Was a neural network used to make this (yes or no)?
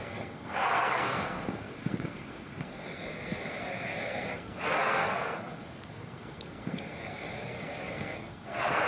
yes